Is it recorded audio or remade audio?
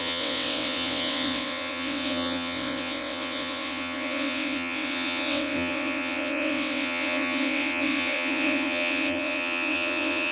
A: remade